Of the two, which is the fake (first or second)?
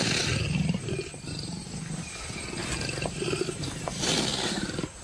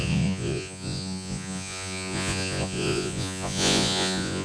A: second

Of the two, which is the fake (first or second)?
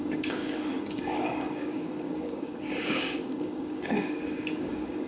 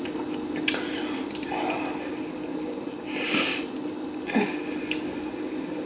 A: first